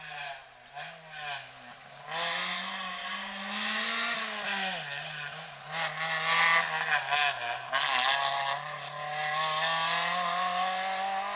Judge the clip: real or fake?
real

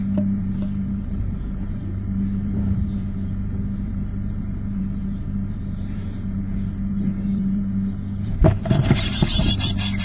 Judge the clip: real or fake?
fake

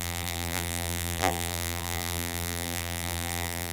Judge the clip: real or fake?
fake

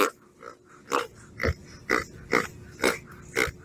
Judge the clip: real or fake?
real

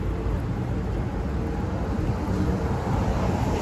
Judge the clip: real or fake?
real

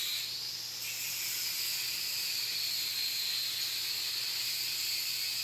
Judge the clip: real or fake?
real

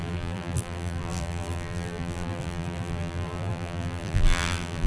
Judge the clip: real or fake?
fake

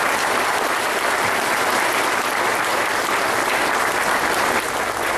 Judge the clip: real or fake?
real